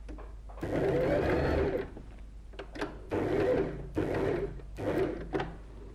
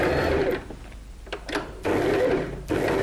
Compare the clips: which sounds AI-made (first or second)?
second